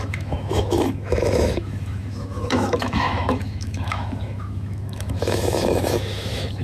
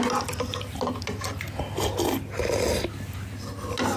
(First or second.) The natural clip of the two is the second